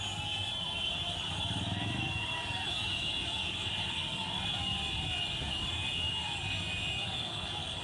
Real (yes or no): no